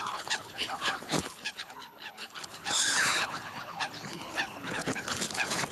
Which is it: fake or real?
fake